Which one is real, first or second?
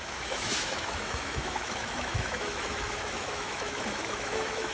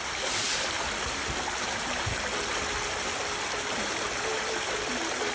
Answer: second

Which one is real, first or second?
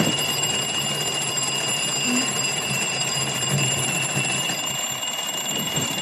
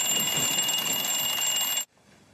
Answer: second